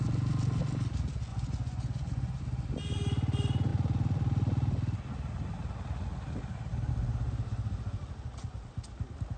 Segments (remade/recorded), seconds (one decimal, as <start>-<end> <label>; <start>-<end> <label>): 0.0-1.3 recorded; 1.3-2.4 remade; 2.4-9.4 recorded